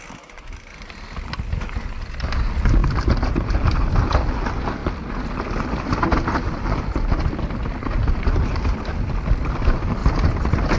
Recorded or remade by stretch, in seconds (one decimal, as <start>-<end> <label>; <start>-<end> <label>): 0.0-10.8 recorded